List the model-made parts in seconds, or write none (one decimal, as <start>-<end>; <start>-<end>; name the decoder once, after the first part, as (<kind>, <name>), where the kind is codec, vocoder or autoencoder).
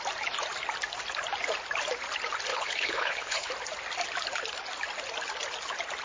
2.5-3.5 (codec, HILCodec)